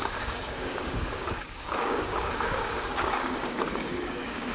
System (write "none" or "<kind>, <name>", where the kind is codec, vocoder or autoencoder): codec, DAC